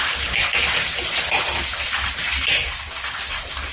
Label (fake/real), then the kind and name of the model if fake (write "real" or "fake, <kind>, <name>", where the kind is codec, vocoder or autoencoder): real